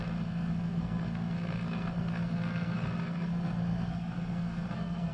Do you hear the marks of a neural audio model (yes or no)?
yes